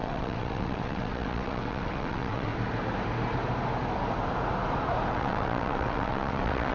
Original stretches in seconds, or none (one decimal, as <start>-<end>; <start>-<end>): 2.5-5.1